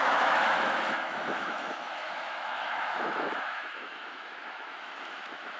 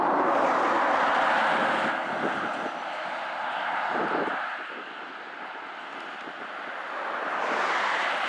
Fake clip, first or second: first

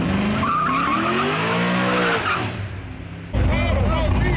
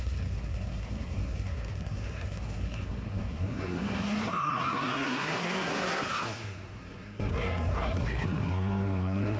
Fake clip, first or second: second